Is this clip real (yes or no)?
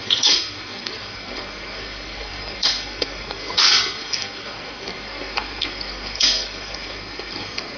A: no